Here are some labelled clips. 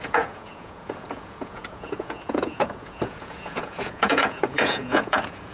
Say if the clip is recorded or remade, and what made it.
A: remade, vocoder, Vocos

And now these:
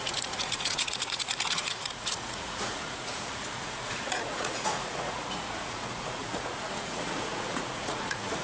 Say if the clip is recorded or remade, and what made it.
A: remade, vocoder, Vocos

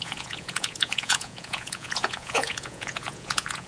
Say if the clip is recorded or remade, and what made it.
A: remade, vocoder, Vocos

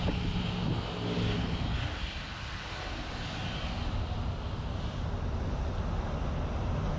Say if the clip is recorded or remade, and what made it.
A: recorded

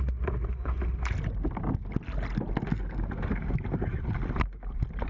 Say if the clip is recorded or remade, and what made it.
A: recorded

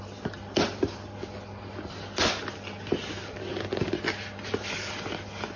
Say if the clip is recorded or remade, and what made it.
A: recorded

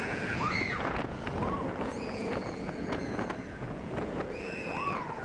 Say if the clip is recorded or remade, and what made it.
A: remade, vocoder, Vocos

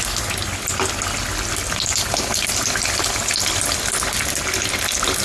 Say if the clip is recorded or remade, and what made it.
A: recorded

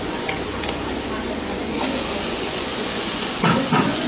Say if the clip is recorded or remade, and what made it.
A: remade, vocoder, Vocos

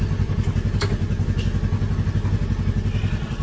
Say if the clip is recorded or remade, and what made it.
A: recorded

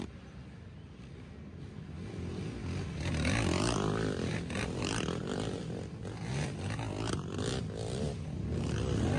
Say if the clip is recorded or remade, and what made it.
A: recorded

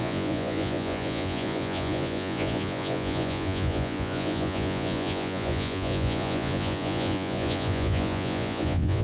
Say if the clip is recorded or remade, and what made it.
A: remade, vocoder, Vocos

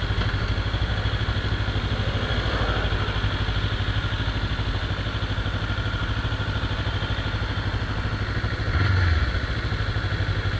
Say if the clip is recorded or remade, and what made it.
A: recorded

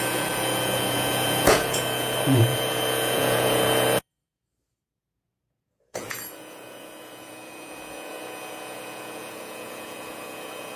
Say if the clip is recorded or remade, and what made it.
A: remade, vocoder, Vocos